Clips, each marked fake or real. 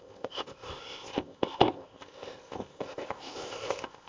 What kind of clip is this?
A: fake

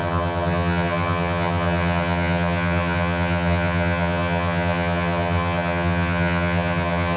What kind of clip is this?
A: fake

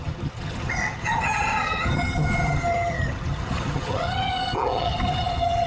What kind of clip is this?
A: fake